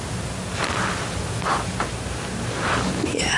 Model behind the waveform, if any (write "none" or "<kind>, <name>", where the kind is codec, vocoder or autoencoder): none